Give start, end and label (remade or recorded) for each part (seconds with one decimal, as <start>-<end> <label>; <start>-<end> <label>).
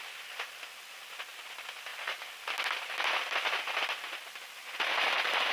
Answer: 0.0-5.5 recorded